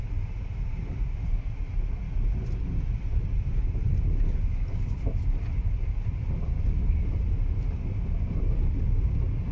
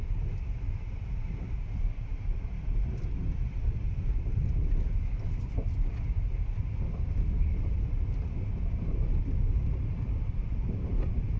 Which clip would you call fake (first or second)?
second